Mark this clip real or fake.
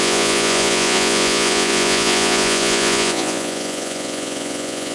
fake